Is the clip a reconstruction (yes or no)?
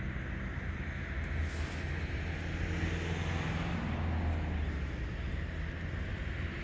no